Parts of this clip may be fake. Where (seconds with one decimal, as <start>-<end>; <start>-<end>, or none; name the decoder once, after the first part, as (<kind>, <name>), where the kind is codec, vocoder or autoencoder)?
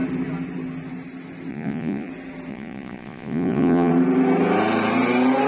1.5-2.1 (vocoder, Vocos); 2.5-3.9